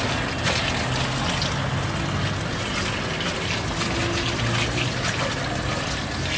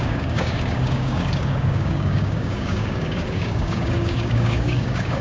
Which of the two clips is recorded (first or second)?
first